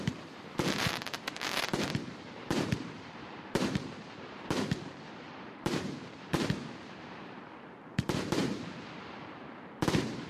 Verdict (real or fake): fake